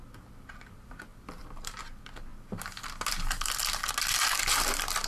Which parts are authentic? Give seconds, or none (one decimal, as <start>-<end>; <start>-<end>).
0.0-1.1; 1.8-5.1